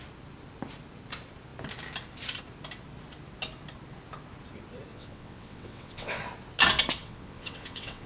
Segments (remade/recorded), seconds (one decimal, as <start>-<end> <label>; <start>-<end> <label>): 0.0-4.9 recorded; 4.9-6.2 remade; 6.2-7.0 recorded; 7.0-8.1 remade